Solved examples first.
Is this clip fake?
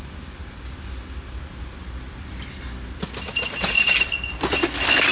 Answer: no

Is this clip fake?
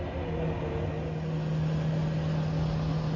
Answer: no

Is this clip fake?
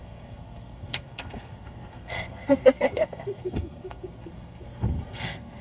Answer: yes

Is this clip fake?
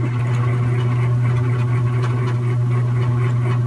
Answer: no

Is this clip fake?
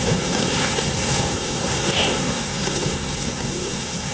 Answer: yes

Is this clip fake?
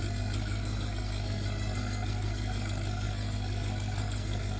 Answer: yes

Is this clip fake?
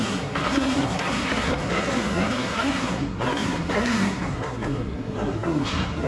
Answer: yes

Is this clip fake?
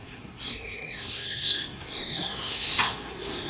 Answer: yes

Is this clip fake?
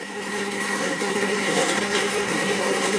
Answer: yes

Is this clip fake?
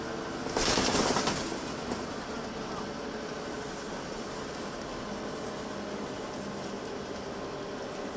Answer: no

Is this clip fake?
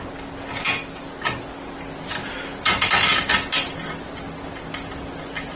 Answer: no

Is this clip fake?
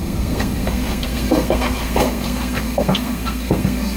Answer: yes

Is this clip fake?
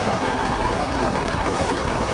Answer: yes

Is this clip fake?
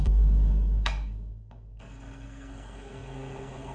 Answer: yes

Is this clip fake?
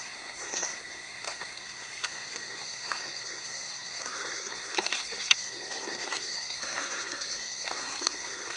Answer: yes